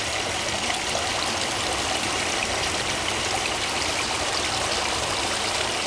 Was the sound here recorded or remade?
remade